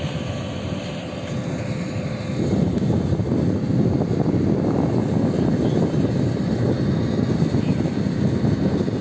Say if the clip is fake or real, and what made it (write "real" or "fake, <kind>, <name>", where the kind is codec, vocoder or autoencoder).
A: real